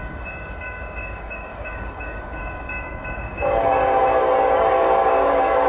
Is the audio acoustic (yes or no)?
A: no